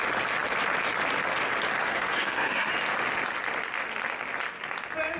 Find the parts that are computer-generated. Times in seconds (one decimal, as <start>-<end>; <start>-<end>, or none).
1.9-2.7